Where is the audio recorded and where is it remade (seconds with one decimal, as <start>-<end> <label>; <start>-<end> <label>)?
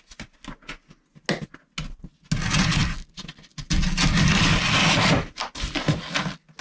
0.0-6.6 recorded